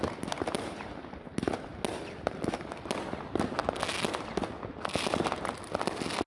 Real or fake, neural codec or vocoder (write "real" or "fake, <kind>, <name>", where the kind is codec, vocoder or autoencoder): real